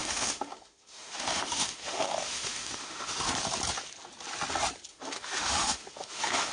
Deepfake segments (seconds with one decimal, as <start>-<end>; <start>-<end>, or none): 0.0-3.3; 4.9-6.5